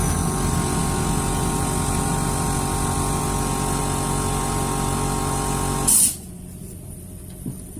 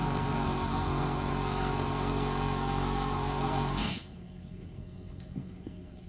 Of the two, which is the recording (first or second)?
first